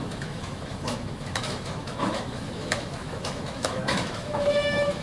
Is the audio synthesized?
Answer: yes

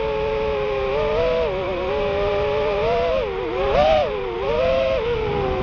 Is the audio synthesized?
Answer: no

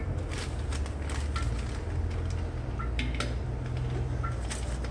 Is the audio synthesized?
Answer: no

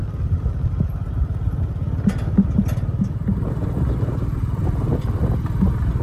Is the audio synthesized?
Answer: no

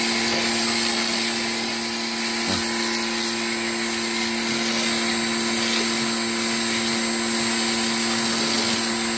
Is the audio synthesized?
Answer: no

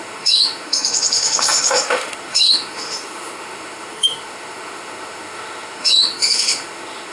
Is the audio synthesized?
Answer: yes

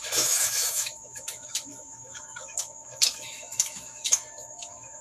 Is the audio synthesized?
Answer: yes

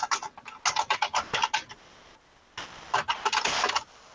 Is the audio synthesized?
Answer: no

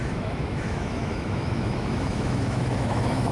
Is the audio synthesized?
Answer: yes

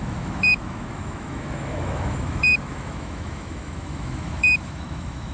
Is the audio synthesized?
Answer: yes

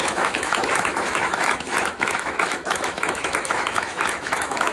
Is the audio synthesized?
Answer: yes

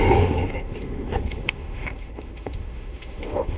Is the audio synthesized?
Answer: yes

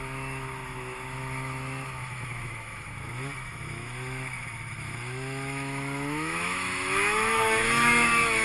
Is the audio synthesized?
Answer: yes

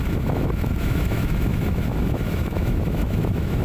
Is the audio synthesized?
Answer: yes